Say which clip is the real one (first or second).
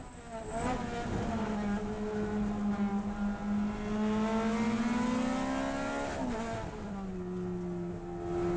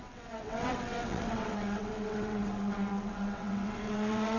first